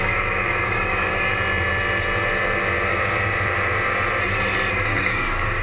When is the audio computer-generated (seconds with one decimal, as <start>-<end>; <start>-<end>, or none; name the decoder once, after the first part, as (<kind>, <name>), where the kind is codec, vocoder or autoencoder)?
0.0-1.3 (codec, DAC); 4.7-5.6